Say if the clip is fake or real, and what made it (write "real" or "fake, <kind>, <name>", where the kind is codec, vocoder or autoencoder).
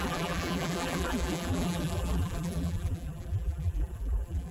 fake, vocoder, BigVGAN v2